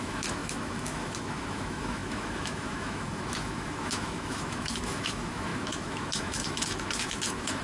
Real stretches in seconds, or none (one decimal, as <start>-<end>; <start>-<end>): none